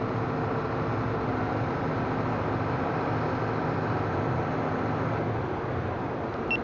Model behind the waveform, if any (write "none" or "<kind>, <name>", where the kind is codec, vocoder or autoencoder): none